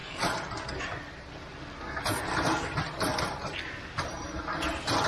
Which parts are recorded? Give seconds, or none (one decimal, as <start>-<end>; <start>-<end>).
0.0-5.1

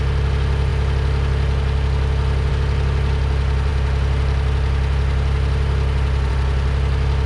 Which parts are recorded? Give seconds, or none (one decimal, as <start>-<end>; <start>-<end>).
0.0-7.3

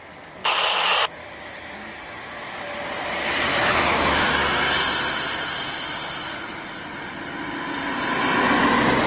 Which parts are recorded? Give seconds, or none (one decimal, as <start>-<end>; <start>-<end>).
0.0-1.2; 2.6-3.5; 4.3-9.1

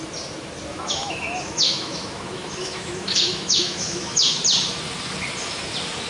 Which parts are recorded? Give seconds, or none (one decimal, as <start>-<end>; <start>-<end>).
0.0-0.7; 4.4-6.1